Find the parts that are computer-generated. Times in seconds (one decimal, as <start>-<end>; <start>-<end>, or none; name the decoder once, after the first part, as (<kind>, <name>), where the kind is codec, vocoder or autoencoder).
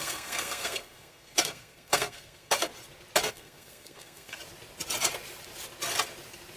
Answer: 0.0-2.7 (codec, SNAC); 3.3-4.4